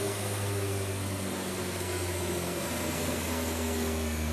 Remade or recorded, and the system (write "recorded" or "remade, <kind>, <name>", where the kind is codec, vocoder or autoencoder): remade, codec, SNAC